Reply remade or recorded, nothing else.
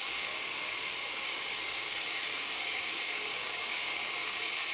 remade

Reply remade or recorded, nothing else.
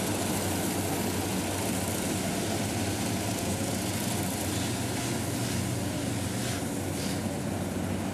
recorded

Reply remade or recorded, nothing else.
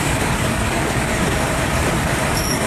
remade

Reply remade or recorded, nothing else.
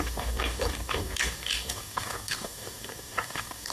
remade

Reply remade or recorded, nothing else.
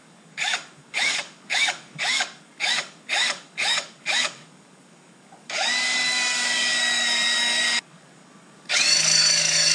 remade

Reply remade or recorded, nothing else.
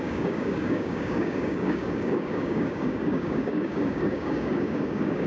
remade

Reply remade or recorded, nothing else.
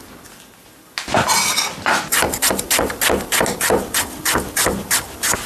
recorded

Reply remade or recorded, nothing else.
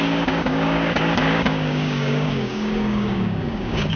remade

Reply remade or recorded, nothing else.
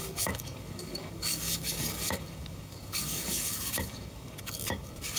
remade